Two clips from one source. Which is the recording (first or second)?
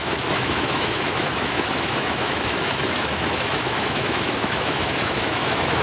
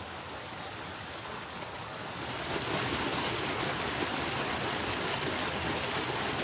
second